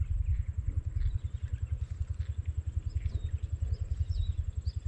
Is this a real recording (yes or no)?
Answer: yes